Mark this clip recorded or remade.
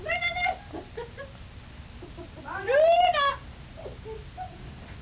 recorded